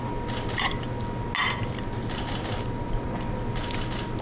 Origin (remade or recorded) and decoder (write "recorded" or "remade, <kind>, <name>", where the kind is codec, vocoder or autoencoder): recorded